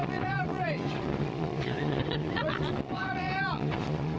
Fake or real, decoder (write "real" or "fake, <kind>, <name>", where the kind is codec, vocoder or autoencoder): fake, vocoder, Vocos